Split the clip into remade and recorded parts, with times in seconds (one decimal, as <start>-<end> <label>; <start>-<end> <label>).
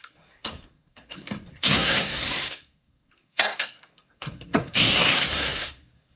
0.0-6.2 remade